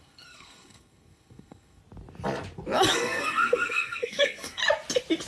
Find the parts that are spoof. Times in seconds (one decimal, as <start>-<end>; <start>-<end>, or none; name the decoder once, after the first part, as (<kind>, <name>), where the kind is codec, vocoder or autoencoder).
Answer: 0.0-1.8 (codec, SNAC); 2.9-4.6